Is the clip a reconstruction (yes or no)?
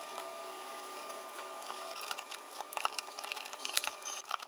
yes